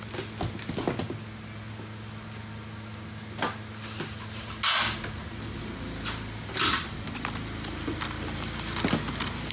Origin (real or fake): real